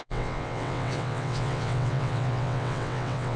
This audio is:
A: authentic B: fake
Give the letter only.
B